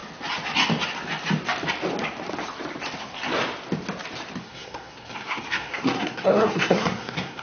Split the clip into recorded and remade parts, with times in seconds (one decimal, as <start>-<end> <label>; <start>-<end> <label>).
0.0-4.4 recorded; 4.4-7.4 remade